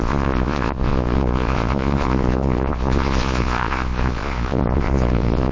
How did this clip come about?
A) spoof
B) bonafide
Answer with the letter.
A